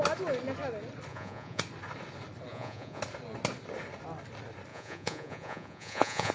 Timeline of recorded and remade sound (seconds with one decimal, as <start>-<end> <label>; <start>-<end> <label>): 0.0-1.1 recorded; 1.1-1.6 remade; 1.6-2.5 recorded; 2.5-3.0 remade; 3.0-4.7 recorded; 4.7-6.3 remade